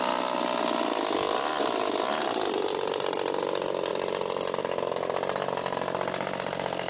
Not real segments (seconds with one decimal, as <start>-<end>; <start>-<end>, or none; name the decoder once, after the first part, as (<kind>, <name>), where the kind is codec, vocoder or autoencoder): none